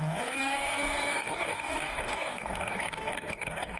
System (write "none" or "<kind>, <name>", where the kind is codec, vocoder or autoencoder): codec, DAC